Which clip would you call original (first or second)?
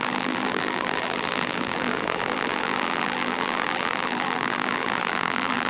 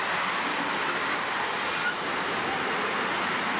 second